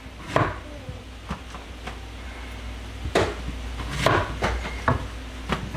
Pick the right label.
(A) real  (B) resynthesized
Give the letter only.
A